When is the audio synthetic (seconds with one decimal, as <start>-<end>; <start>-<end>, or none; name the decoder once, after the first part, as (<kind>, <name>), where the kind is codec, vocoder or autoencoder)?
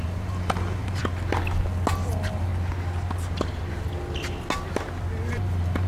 0.0-1.0 (vocoder, BigVGAN v2); 2.1-2.5; 5.3-5.9